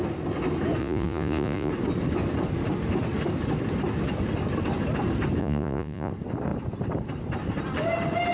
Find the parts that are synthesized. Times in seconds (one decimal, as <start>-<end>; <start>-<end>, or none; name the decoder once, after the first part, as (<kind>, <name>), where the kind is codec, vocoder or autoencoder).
0.8-1.7 (vocoder, Vocos); 5.4-6.1